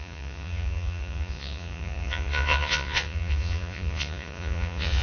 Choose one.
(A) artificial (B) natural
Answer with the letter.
A